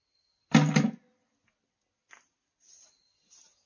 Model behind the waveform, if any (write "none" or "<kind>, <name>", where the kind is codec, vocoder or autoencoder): none